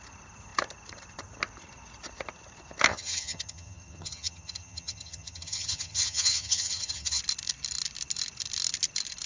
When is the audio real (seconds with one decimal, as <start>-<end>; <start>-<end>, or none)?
0.0-2.9; 7.2-9.3